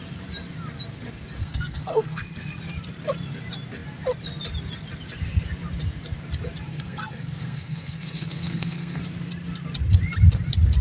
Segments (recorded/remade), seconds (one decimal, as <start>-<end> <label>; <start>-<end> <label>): 0.0-1.4 recorded; 1.4-2.6 remade; 2.6-6.7 recorded; 6.7-9.0 remade; 9.0-10.8 recorded